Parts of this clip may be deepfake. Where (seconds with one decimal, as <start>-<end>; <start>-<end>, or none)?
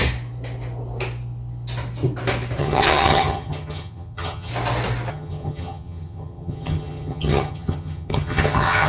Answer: 2.6-4.5; 5.1-8.9